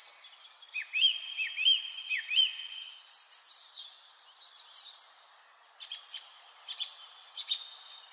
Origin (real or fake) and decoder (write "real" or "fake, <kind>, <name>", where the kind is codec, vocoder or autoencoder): real